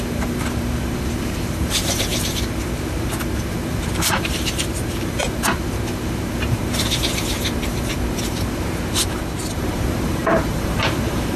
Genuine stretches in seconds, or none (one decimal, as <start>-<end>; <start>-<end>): 9.2-9.7